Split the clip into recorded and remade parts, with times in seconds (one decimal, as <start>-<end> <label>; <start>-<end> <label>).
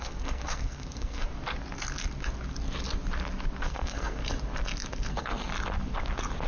0.0-1.3 remade; 1.3-3.6 recorded; 3.6-4.2 remade; 4.2-5.1 recorded; 5.1-5.5 remade; 5.5-6.5 recorded